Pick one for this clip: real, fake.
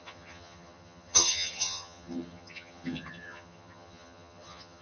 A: fake